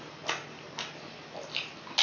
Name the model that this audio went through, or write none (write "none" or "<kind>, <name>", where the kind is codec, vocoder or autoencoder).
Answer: none